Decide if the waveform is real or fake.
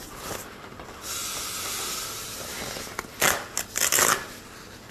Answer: real